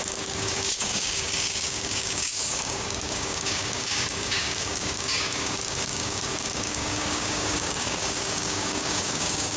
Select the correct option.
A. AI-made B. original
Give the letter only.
A